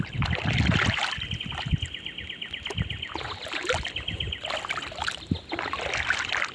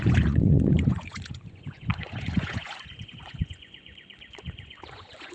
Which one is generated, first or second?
second